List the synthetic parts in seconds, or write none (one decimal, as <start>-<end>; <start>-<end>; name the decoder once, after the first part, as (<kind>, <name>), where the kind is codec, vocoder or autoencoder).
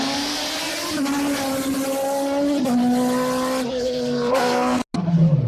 0.0-0.4 (codec, SNAC); 3.7-4.8